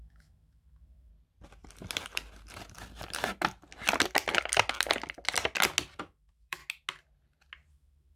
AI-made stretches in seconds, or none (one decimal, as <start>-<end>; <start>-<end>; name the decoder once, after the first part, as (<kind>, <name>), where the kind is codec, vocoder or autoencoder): 0.0-1.1 (autoencoder, DAC-VAE); 6.0-6.6; 7.7-8.2